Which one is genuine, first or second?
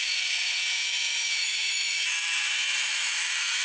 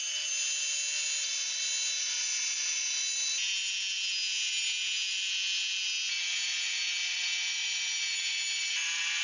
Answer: second